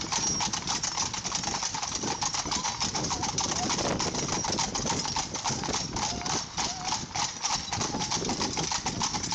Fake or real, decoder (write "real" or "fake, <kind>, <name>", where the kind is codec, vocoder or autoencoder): real